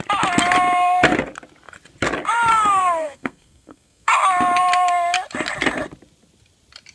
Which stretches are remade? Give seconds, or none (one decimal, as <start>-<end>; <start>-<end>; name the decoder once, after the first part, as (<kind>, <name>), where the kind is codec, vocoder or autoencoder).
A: 2.5-4.1 (codec, SNAC)